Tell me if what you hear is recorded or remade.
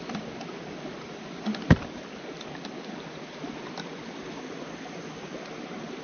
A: remade